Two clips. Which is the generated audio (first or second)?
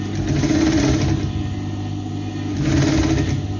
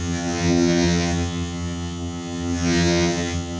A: second